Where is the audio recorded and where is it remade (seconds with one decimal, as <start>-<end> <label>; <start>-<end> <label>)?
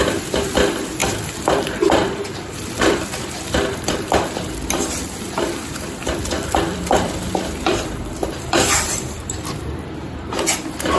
0.0-11.0 remade